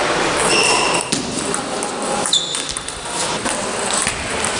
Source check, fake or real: real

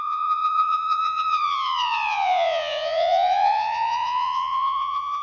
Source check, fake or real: fake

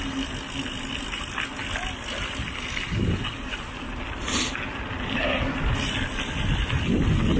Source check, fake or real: real